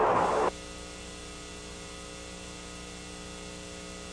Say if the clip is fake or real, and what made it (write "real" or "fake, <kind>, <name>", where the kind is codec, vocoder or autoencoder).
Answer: real